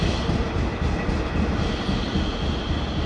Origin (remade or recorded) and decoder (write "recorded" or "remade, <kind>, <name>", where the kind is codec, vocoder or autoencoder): recorded